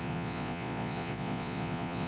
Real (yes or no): no